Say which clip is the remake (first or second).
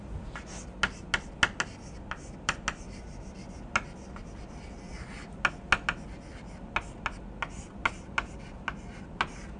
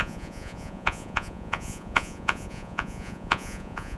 second